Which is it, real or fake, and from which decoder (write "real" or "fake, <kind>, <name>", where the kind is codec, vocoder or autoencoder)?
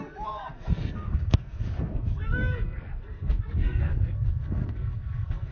fake, codec, SNAC